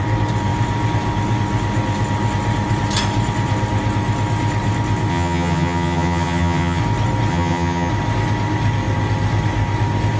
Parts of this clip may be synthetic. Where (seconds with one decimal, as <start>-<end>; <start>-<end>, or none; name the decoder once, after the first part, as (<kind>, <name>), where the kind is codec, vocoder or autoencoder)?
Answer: 5.1-6.8 (vocoder, HiFi-GAN); 7.3-7.9